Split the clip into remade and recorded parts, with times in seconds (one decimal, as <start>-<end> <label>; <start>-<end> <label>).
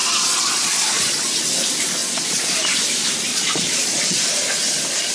0.0-1.2 remade; 1.2-2.0 recorded; 2.0-2.7 remade; 2.7-3.3 recorded; 3.3-4.2 remade; 4.2-5.1 recorded